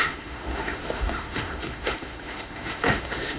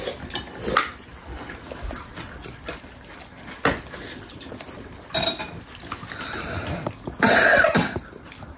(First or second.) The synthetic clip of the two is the first